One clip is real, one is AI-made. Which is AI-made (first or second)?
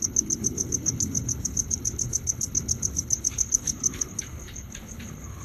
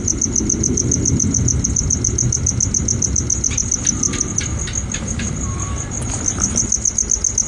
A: first